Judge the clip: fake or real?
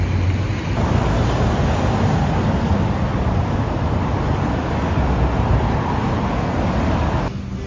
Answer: real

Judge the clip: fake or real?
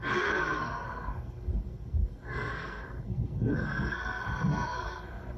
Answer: fake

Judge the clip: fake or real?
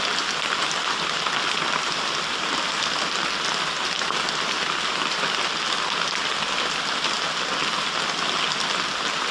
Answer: real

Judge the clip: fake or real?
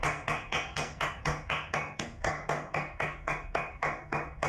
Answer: fake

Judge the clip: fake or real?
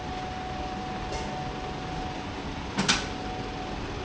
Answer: real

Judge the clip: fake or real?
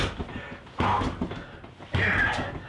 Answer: real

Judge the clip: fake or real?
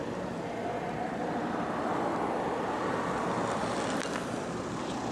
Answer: real